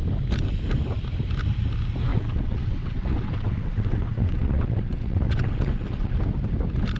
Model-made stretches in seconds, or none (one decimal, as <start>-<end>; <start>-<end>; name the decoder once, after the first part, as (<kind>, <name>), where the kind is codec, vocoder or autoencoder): 2.1-6.1 (vocoder, WaveNeXt)